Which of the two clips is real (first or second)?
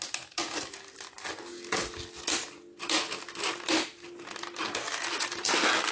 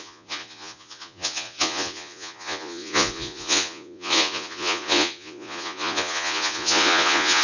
first